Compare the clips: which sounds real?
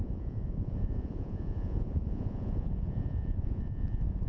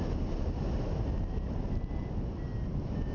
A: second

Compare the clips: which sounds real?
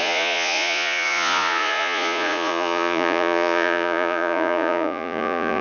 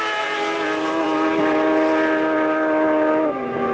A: second